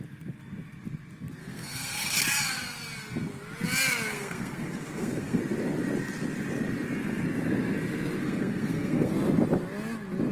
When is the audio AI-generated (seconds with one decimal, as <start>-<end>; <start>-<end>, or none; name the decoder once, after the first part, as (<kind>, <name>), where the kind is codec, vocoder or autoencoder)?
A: 1.4-2.2 (codec, SNAC); 4.1-5.4; 8.2-9.1